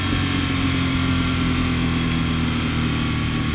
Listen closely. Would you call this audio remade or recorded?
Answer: recorded